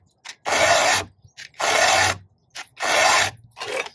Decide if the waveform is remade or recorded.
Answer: recorded